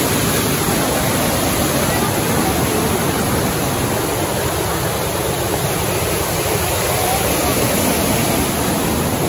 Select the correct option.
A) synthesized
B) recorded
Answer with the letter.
B